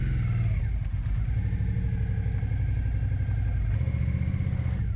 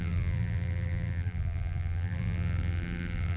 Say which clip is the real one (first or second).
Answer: first